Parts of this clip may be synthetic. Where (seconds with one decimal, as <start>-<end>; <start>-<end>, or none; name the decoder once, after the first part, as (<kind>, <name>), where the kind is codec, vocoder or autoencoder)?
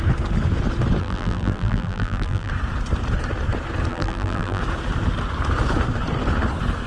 1.0-2.5 (vocoder, BigVGAN v2); 3.9-4.6